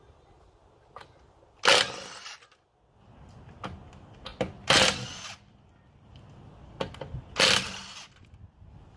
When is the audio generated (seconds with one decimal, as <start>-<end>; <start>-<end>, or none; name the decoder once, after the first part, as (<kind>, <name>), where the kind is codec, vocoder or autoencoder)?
4.3-6.3 (vocoder, BigVGAN v2)